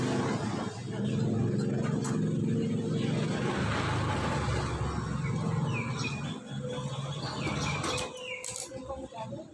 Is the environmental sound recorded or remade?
recorded